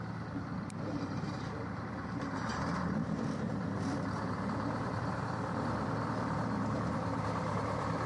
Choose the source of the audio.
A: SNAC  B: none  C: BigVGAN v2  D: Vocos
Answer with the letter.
C